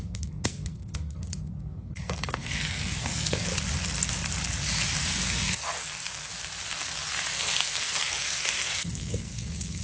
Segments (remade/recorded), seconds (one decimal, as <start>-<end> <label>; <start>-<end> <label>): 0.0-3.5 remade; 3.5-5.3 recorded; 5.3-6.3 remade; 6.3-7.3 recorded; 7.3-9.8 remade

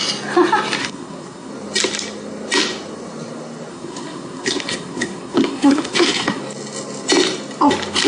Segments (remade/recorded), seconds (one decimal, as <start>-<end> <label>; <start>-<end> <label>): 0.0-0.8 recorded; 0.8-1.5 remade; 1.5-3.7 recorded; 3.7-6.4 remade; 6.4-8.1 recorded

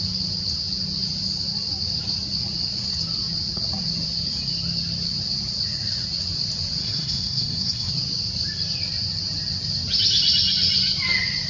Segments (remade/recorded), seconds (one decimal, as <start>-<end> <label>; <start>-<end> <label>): 0.0-6.8 recorded; 6.8-7.9 remade; 7.9-11.5 recorded

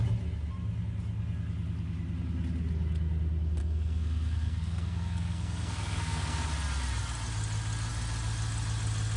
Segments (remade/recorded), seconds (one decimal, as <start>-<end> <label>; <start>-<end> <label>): 0.0-3.6 recorded; 3.6-6.5 remade; 6.5-9.2 recorded

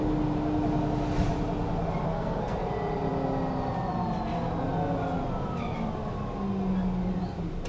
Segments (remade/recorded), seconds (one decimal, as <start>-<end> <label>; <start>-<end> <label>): 0.0-2.1 recorded; 2.1-2.7 remade; 2.7-7.7 recorded

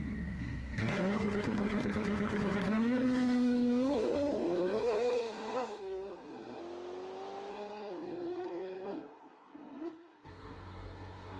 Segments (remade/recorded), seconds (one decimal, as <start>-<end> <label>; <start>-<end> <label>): 0.0-6.6 remade; 6.6-7.5 recorded; 7.5-11.4 remade